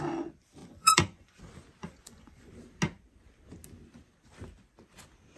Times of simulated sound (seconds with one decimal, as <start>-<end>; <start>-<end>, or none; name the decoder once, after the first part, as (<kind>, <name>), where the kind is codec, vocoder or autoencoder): 0.6-1.4 (vocoder, Vocos); 1.8-2.5